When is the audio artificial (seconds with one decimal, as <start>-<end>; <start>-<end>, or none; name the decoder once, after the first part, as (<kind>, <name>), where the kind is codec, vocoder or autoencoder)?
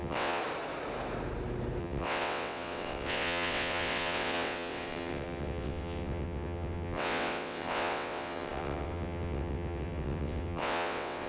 0.0-0.4 (vocoder, WaveNeXt); 1.8-11.3